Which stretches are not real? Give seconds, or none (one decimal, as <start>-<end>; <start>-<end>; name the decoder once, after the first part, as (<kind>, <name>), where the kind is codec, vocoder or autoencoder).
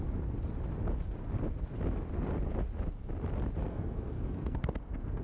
3.6-5.2 (codec, SNAC)